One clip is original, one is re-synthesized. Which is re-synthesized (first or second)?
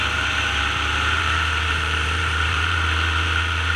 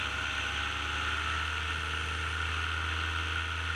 first